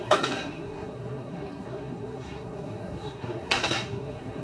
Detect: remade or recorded remade